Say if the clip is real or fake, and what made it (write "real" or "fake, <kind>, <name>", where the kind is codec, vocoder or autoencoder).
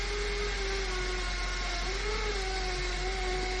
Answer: real